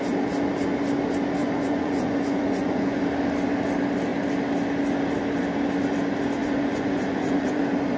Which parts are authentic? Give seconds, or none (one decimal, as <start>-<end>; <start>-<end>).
0.0-1.4; 3.0-6.4; 7.6-8.0